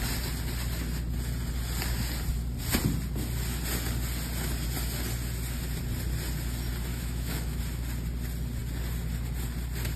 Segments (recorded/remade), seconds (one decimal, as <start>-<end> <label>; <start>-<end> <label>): 0.0-6.9 recorded; 6.9-7.6 remade; 7.6-10.0 recorded